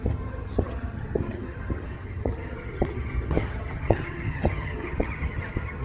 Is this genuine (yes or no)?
no